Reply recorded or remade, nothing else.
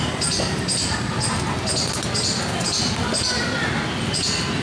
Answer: recorded